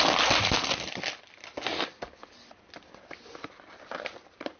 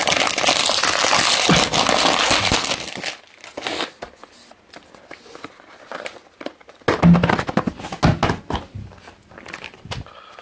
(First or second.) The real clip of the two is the second